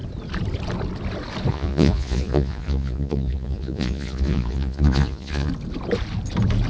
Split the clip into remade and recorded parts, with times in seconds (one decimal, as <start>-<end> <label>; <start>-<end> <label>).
0.0-1.5 recorded; 1.5-5.5 remade; 5.5-6.7 recorded